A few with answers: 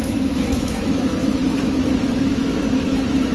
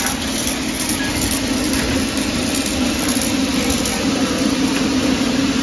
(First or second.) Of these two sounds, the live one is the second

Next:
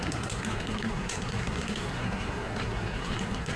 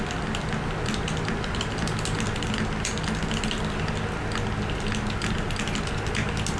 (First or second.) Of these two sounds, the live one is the second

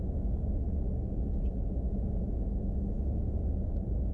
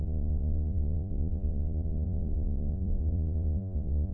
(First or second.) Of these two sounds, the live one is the first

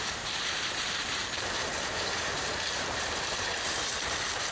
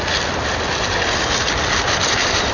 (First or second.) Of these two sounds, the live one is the second